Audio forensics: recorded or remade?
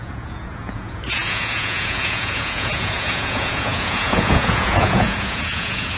remade